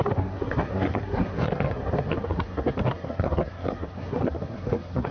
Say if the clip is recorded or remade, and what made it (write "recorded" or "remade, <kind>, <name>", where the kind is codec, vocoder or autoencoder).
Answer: remade, codec, SNAC